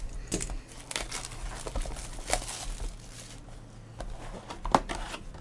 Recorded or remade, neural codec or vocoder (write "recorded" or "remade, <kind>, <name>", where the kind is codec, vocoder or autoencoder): recorded